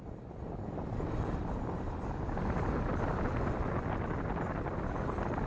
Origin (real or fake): real